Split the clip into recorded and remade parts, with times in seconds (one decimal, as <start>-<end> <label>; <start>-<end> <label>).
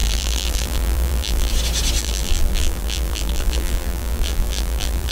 0.0-1.5 remade; 1.5-2.0 recorded; 2.0-5.1 remade